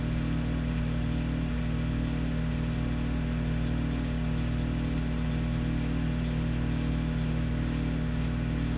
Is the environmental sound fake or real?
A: real